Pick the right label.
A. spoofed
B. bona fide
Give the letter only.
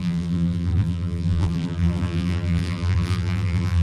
A